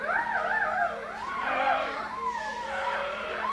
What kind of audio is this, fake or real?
real